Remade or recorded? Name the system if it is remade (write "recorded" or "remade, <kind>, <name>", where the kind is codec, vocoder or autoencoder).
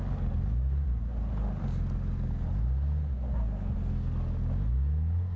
recorded